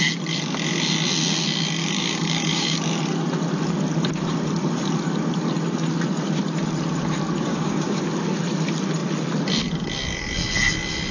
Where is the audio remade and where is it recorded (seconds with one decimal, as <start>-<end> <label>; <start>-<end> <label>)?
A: 0.0-1.8 recorded; 1.8-2.8 remade; 2.8-7.5 recorded; 7.5-8.0 remade; 8.0-11.1 recorded